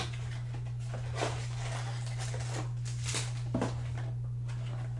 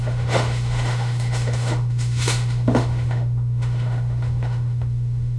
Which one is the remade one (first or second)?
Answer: second